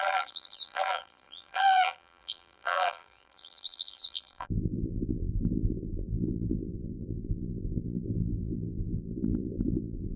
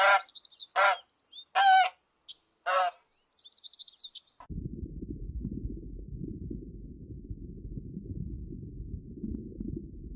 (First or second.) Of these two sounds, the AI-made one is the first